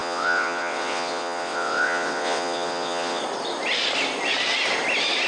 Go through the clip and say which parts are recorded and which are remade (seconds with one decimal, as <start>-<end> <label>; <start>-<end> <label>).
0.0-3.2 remade; 3.2-5.3 recorded